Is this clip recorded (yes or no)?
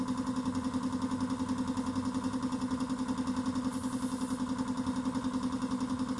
yes